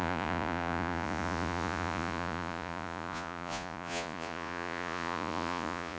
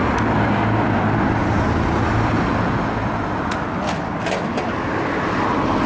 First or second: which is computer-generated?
first